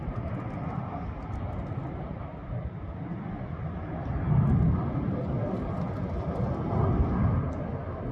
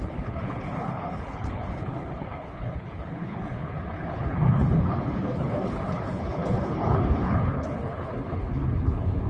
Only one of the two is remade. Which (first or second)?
second